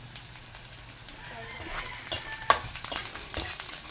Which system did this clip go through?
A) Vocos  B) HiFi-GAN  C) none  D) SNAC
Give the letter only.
C